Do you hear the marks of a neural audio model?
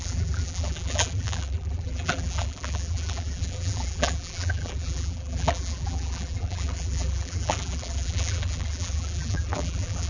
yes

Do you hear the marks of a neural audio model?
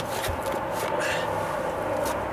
no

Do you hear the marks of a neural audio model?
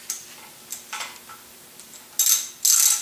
no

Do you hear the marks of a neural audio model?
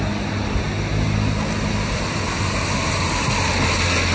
no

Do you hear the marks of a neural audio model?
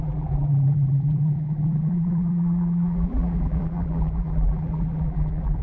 yes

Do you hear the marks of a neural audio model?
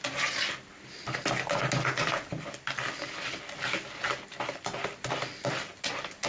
no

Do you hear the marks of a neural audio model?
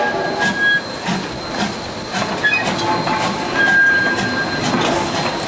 no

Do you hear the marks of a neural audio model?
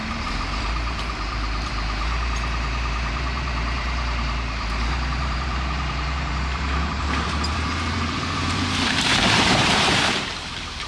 yes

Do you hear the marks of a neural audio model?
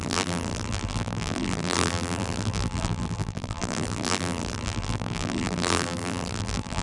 yes